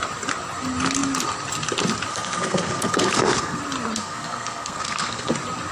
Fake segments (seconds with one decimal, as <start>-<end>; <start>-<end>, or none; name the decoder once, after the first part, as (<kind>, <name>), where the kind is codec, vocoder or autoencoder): 2.1-3.6 (codec, SNAC); 4.0-5.3